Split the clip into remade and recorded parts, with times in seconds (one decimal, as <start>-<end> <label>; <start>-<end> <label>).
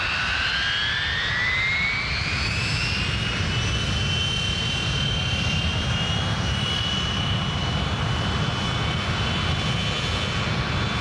0.0-5.7 recorded; 5.7-8.5 remade; 8.5-11.0 recorded